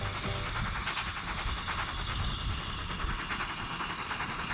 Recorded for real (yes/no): yes